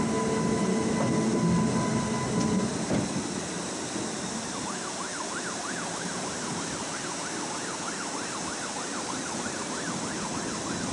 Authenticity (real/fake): real